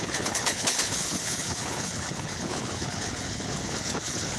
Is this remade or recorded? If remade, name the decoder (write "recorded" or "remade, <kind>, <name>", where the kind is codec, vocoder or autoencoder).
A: remade, codec, HILCodec